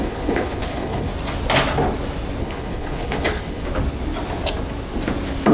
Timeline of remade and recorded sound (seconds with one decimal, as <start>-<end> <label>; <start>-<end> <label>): 0.0-1.1 remade; 1.1-2.4 recorded; 2.4-3.6 remade; 3.6-5.5 recorded